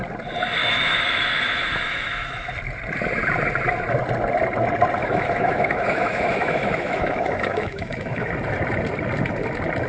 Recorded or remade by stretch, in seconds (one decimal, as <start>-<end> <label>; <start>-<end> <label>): 0.0-0.6 recorded; 0.6-2.5 remade; 2.5-5.0 recorded; 5.0-8.3 remade; 8.3-9.9 recorded